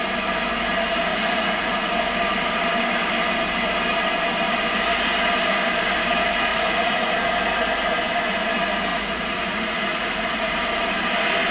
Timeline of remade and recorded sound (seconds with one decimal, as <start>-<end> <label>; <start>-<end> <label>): 0.0-1.1 recorded; 1.1-1.9 remade; 1.9-6.5 recorded; 6.5-7.1 remade; 7.1-8.9 recorded; 8.9-10.5 remade; 10.5-11.5 recorded